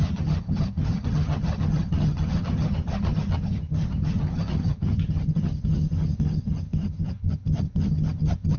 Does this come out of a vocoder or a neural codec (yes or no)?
yes